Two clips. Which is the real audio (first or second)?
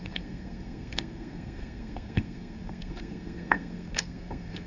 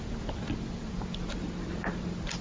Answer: second